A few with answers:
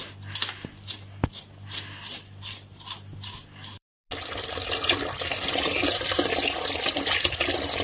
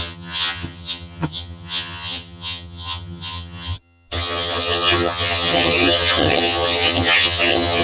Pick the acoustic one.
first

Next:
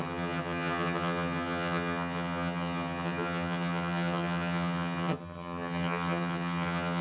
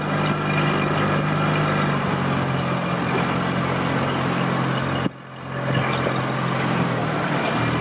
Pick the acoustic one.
second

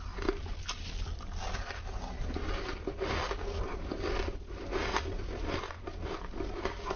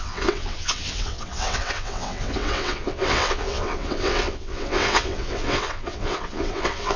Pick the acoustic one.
first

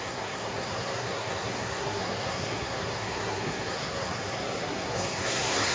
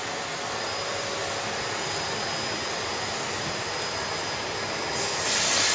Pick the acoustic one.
second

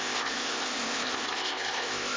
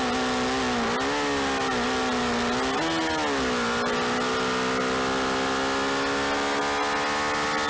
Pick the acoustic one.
second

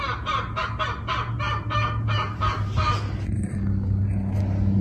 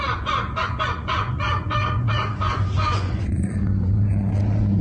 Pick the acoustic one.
first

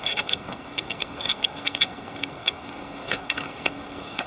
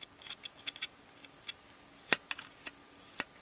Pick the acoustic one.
second